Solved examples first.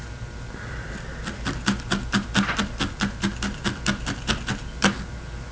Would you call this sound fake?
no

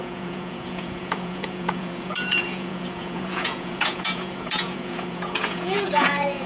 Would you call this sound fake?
yes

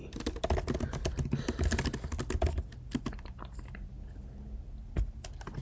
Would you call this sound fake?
no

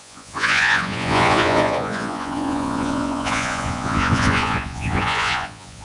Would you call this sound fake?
yes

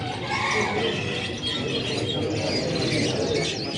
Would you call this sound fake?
no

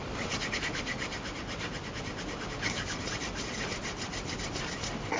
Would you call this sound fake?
no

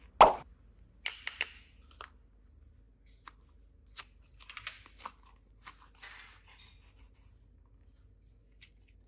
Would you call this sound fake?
no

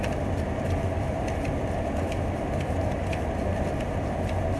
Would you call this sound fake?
no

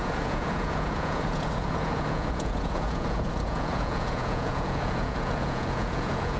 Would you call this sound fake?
yes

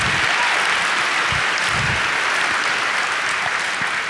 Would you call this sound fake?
no